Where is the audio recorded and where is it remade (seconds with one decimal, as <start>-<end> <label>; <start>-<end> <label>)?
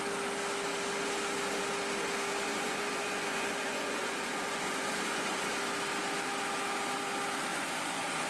0.0-2.5 recorded; 2.5-5.5 remade; 5.5-7.5 recorded; 7.5-8.3 remade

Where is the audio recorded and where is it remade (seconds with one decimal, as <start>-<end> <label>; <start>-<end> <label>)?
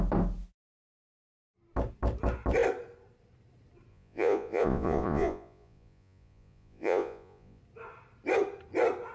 0.0-3.9 recorded; 3.9-7.6 remade; 7.6-9.1 recorded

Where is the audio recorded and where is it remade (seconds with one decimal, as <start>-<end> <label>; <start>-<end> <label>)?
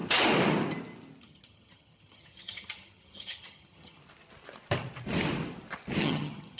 0.0-1.2 recorded; 1.2-4.0 remade; 4.0-6.0 recorded; 6.0-6.6 remade